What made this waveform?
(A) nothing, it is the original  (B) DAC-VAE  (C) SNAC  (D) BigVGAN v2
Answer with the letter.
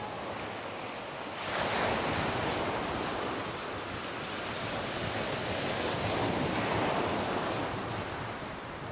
A